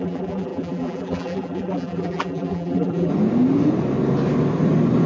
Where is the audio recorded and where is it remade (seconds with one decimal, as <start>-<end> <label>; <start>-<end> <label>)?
0.0-3.1 remade; 3.1-5.1 recorded